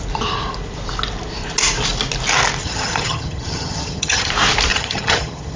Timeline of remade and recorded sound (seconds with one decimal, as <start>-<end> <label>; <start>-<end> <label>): 0.0-2.6 recorded; 2.6-4.3 remade; 4.3-4.7 recorded; 4.7-5.6 remade